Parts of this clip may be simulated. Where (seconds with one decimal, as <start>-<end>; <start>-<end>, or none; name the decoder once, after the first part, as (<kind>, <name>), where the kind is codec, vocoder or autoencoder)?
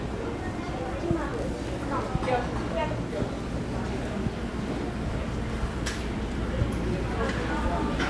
none